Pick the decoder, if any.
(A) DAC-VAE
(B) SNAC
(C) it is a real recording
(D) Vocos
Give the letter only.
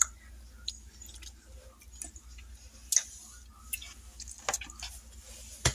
C